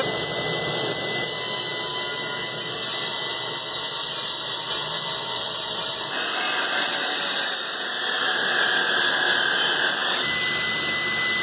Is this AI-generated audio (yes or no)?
no